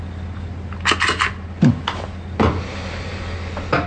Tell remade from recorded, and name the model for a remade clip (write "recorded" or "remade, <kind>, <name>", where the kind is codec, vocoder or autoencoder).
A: recorded